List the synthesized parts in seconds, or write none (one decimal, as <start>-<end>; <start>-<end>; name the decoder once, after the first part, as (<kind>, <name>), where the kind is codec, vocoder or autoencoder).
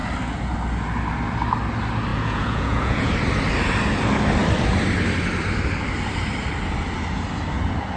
2.1-3.1 (vocoder, Vocos)